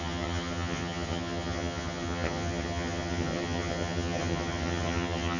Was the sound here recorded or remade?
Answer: remade